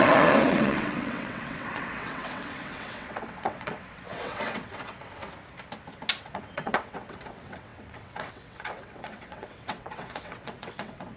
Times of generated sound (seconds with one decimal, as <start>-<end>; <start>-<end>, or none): 0.0-5.2; 6.2-11.2